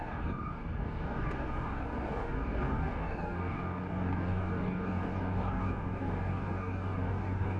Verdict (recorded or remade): remade